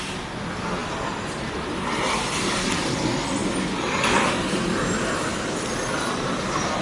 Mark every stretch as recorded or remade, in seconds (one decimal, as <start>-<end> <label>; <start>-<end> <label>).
0.0-6.8 recorded